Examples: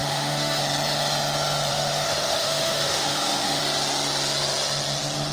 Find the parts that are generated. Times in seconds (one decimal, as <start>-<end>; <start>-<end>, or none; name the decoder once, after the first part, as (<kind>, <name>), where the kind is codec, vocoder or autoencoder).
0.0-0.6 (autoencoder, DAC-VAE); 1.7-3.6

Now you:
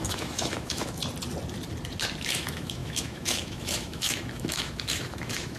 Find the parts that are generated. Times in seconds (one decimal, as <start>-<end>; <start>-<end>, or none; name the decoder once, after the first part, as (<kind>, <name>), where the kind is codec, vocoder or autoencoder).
0.0-1.0 (autoencoder, DAC-VAE); 2.2-5.6

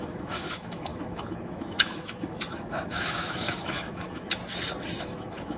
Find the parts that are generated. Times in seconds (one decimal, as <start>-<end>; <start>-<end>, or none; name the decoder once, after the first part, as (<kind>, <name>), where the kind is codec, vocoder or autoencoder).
0.0-4.4 (autoencoder, DAC-VAE); 5.0-5.6

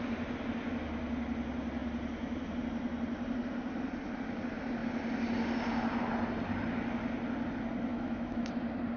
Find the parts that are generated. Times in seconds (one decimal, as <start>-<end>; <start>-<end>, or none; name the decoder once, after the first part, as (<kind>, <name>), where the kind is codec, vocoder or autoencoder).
7.9-8.5 (autoencoder, DAC-VAE)